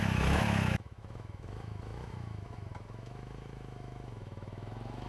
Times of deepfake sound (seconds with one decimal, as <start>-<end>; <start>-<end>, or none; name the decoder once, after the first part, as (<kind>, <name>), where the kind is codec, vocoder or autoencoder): 0.0-5.1 (autoencoder, DAC-VAE)